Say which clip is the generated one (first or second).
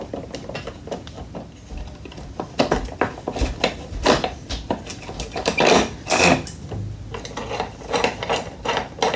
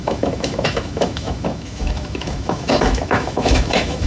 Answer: second